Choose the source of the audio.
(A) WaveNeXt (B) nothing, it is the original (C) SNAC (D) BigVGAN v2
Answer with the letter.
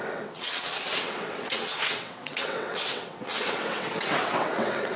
A